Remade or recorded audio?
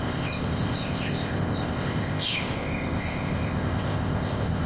remade